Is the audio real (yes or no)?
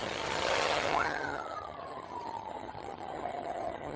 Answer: no